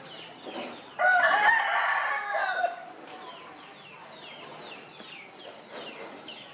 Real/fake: real